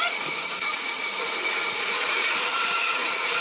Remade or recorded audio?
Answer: remade